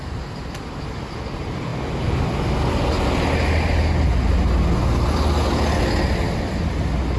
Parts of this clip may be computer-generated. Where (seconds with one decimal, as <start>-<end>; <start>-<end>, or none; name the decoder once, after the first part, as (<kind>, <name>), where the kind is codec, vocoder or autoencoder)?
none